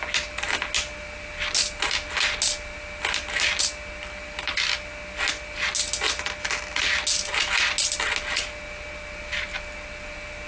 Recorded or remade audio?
recorded